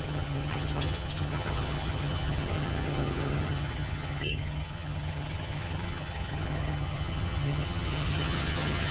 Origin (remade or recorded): remade